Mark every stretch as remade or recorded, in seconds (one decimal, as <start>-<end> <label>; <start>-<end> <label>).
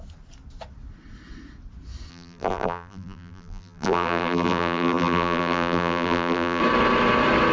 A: 0.0-2.1 recorded; 2.1-6.6 remade; 6.6-7.5 recorded